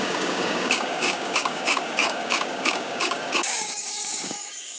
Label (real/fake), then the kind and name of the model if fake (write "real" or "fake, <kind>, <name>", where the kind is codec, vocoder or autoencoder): fake, codec, DAC